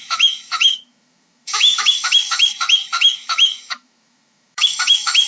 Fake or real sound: fake